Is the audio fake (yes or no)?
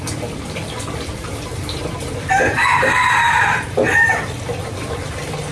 yes